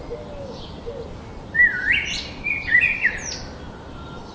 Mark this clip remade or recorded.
recorded